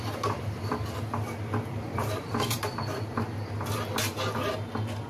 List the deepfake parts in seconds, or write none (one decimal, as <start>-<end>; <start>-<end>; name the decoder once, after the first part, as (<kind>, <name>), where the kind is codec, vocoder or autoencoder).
1.9-2.6 (vocoder, BigVGAN v2)